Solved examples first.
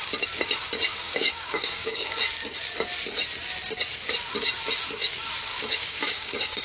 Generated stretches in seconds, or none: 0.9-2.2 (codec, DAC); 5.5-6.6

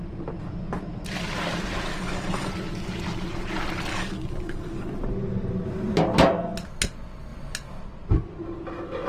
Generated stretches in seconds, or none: 1.9-2.5 (codec, DAC); 3.9-4.9

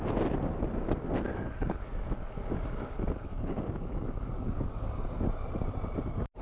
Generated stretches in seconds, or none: 1.3-5.0 (codec, DAC)